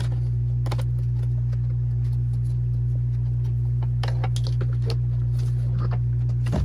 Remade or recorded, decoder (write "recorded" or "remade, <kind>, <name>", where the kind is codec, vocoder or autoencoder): recorded